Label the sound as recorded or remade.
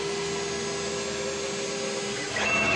recorded